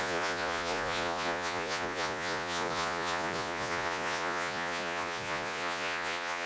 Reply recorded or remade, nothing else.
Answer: remade